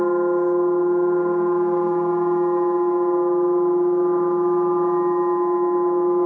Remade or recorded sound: recorded